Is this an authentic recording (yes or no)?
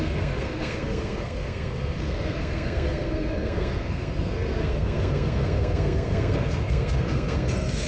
no